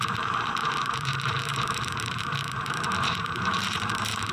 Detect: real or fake fake